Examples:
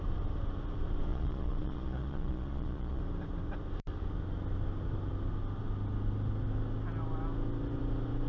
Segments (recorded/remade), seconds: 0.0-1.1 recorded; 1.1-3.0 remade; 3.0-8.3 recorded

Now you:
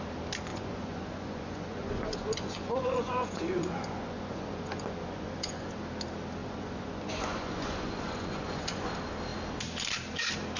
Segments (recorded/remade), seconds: 0.0-0.5 recorded; 0.5-5.7 remade; 5.7-6.4 recorded; 6.4-8.9 remade; 8.9-10.6 recorded

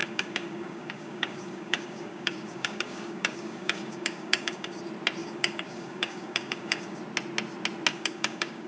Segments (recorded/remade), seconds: 0.0-4.8 remade; 4.8-5.2 recorded; 5.2-7.0 remade; 7.0-7.9 recorded; 7.9-8.7 remade

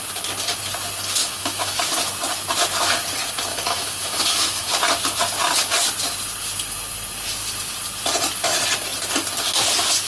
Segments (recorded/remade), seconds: 0.0-1.2 recorded; 1.2-1.8 remade; 1.8-3.5 recorded; 3.5-4.7 remade; 4.7-10.1 recorded